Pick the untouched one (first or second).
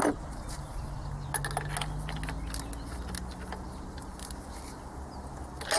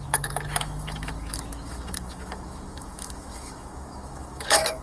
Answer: first